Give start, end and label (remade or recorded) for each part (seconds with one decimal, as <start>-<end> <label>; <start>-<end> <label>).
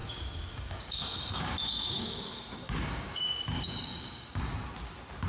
0.0-4.5 remade; 4.5-5.3 recorded